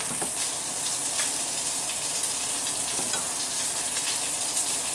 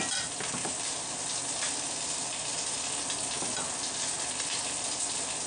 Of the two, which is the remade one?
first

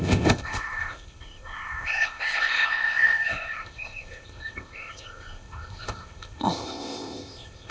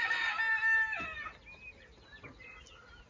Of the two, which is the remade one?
first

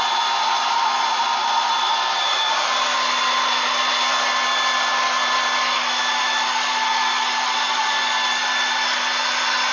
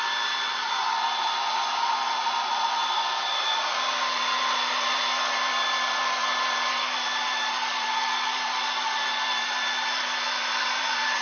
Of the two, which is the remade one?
second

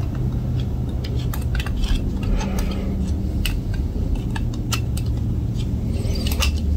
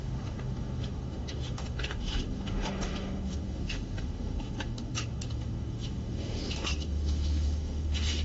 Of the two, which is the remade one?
second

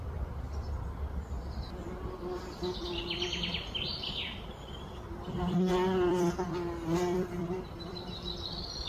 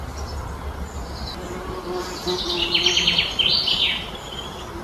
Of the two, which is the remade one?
first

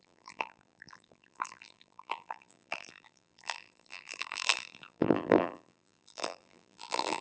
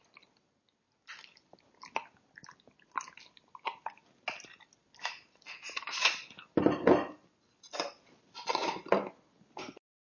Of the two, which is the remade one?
first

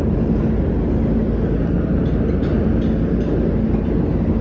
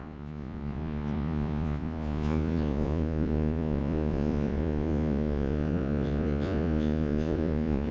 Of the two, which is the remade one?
second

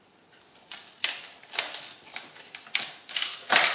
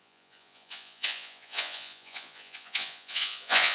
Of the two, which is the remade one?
second